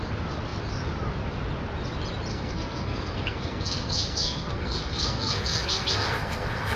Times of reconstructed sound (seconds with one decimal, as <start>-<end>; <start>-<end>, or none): 2.3-6.8